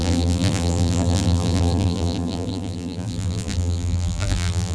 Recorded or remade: remade